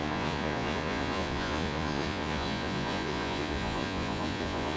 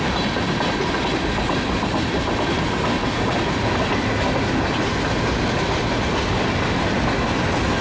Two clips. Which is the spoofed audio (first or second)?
first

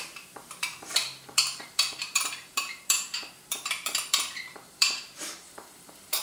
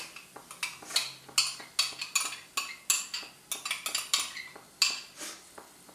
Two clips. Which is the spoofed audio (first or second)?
first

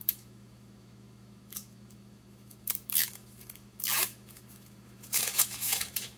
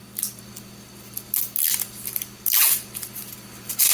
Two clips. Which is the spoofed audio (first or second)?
first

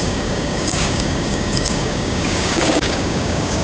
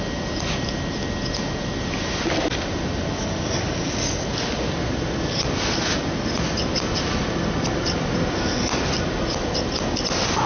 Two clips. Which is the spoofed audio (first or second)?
first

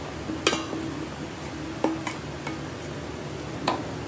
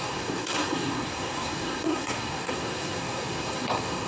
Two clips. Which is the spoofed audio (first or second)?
second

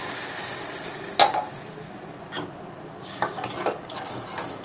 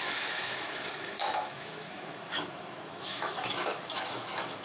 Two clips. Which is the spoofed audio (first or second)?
second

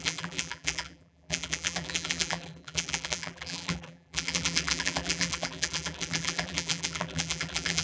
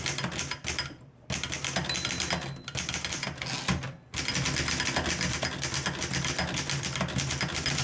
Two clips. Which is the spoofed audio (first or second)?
first